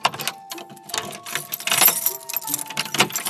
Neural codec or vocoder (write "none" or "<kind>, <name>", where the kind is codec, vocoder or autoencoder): none